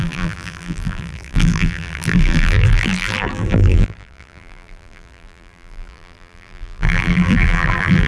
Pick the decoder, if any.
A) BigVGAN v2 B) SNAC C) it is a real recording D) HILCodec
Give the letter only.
A